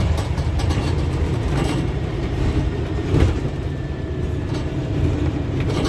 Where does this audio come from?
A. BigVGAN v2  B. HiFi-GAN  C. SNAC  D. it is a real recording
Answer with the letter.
A